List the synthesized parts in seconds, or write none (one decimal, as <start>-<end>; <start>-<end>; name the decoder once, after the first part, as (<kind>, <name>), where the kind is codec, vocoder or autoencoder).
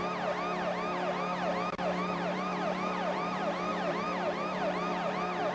2.0-5.5 (vocoder, BigVGAN v2)